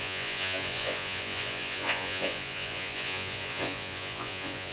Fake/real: fake